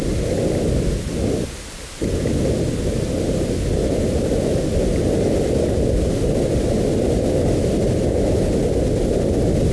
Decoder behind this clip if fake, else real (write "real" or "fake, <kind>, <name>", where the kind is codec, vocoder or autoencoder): real